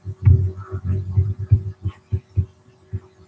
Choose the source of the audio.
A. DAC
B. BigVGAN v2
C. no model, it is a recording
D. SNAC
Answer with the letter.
C